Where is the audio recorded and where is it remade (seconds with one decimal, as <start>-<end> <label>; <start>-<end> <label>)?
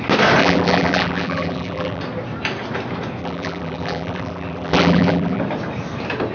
0.0-0.4 recorded; 0.4-2.0 remade; 2.0-3.2 recorded; 3.2-5.4 remade; 5.4-6.3 recorded